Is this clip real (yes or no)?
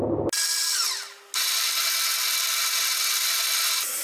yes